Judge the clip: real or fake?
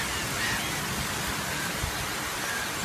real